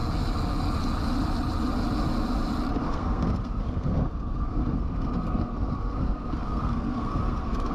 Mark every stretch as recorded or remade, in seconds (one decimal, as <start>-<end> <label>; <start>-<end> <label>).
0.0-2.8 recorded; 2.8-7.7 remade